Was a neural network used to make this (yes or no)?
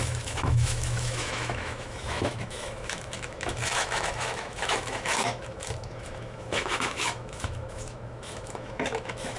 yes